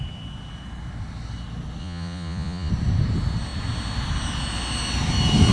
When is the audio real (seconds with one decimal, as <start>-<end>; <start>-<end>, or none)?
0.0-1.8; 2.7-5.5